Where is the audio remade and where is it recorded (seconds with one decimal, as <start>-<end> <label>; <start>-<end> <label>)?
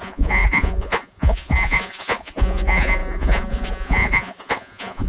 0.0-5.1 remade